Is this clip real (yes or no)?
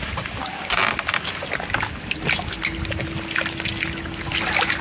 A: yes